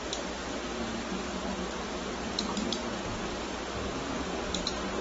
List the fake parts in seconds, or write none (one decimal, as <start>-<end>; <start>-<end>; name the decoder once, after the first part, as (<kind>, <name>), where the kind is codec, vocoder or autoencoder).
none